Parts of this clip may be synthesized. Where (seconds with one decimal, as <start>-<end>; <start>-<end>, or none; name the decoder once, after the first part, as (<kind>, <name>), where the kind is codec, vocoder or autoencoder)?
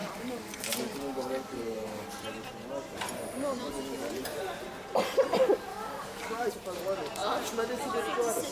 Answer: 0.0-1.3 (codec, DAC); 5.7-6.5